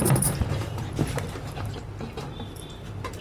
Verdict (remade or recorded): remade